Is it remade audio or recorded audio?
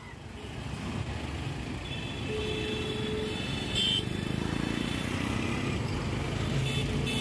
recorded